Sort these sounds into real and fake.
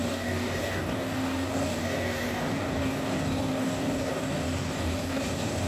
fake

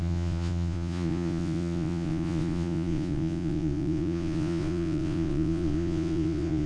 fake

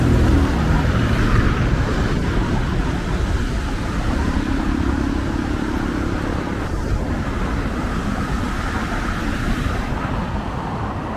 real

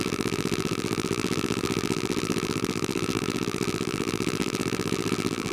fake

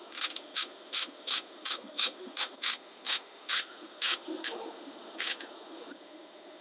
fake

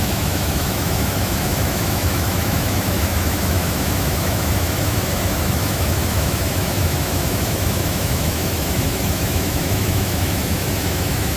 fake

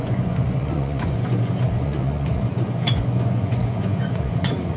fake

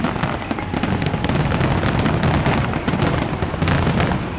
real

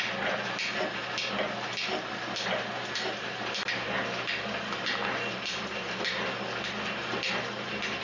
real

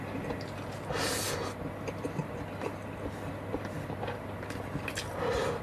real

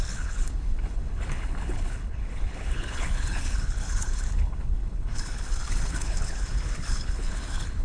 fake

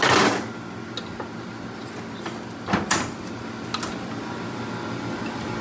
real